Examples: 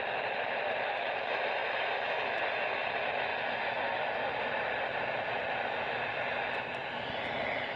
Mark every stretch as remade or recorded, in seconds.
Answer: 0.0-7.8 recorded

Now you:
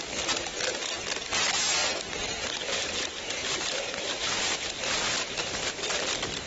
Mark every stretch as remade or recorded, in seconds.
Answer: 0.0-1.8 recorded; 1.8-5.7 remade; 5.7-6.5 recorded

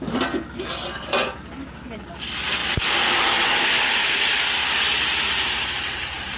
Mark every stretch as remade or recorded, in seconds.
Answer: 0.0-2.6 recorded; 2.6-3.3 remade; 3.3-4.6 recorded; 4.6-6.4 remade

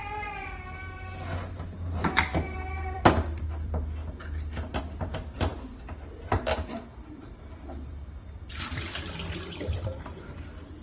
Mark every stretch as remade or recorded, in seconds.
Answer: 0.0-2.0 recorded; 2.0-4.0 remade; 4.0-4.8 recorded; 4.8-10.8 remade